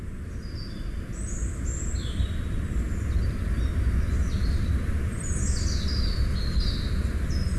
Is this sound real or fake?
real